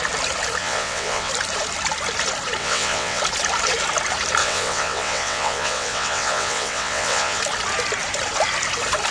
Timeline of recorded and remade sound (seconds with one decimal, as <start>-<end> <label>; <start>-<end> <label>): 0.0-0.6 recorded; 0.6-1.3 remade; 1.3-2.6 recorded; 2.6-3.2 remade; 3.2-4.4 recorded; 4.4-7.4 remade; 7.4-9.1 recorded